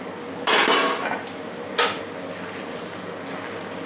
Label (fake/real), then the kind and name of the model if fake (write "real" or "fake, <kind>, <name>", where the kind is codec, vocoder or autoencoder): real